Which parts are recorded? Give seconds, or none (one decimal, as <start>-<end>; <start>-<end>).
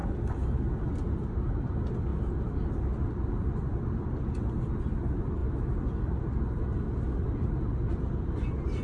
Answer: 0.0-8.8